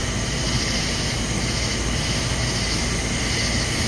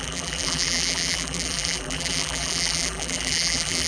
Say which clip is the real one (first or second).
first